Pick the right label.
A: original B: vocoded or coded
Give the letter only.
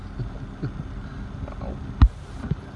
A